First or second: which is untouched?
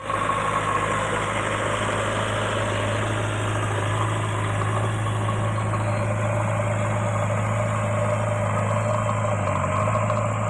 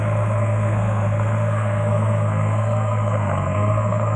first